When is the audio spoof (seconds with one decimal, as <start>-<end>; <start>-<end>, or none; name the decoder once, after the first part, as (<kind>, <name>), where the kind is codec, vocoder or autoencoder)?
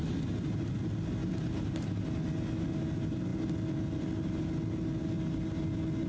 1.2-2.0 (vocoder, BigVGAN v2)